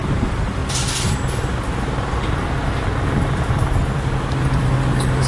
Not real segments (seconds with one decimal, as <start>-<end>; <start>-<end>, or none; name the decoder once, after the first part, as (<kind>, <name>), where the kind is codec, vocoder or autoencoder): none